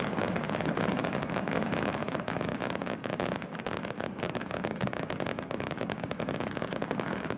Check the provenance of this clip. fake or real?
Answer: fake